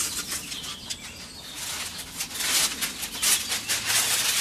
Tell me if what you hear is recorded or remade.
recorded